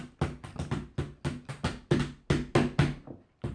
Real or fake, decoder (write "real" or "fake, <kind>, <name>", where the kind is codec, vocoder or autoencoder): real